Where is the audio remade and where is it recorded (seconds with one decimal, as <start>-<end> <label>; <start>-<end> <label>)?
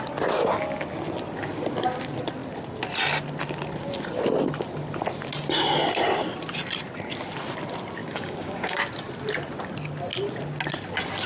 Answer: 0.0-8.0 recorded; 8.0-8.8 remade; 8.8-11.3 recorded